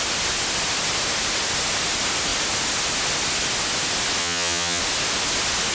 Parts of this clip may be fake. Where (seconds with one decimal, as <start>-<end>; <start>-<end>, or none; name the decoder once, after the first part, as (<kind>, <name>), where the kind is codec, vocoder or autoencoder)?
4.2-4.8 (vocoder, HiFi-GAN)